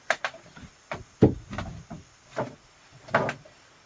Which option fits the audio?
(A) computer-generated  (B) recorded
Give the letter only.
B